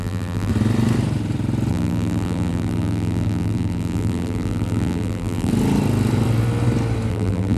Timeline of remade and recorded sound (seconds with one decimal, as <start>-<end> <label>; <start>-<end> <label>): 0.0-0.5 remade; 0.5-1.7 recorded; 1.7-5.5 remade; 5.5-7.1 recorded; 7.1-7.6 remade